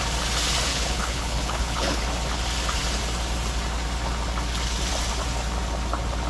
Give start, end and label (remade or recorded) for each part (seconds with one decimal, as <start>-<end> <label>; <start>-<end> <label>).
0.0-0.7 recorded; 0.7-2.0 remade; 2.0-6.3 recorded